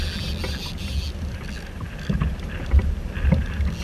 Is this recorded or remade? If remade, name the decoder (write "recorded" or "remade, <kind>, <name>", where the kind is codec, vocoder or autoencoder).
recorded